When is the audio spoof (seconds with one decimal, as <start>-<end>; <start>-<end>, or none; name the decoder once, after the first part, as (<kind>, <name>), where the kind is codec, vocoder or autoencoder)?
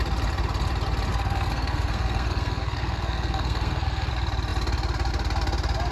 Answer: 1.1-4.1 (codec, SNAC)